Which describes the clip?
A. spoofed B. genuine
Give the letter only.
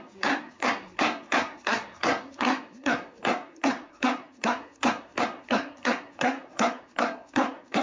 A